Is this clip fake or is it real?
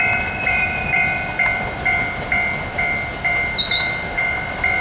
real